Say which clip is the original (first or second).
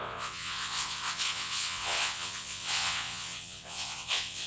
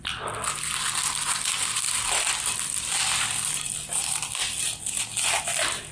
second